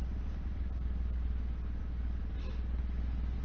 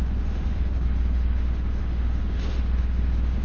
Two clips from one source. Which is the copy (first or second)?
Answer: second